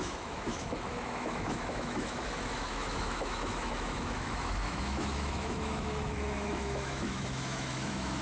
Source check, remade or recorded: remade